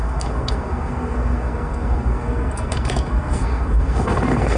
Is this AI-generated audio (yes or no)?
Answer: yes